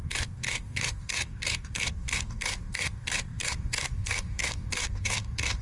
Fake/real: fake